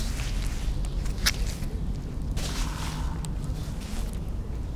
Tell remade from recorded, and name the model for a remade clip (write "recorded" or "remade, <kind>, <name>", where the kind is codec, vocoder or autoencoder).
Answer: recorded